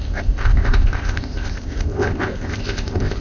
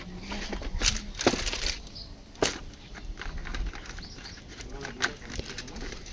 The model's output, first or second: first